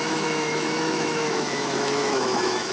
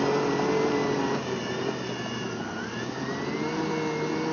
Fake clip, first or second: first